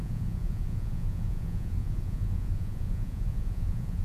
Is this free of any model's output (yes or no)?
no